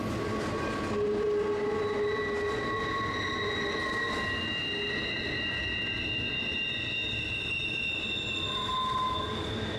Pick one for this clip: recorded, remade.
recorded